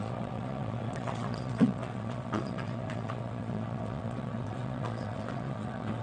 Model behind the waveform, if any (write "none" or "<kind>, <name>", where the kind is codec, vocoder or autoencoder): vocoder, WaveNeXt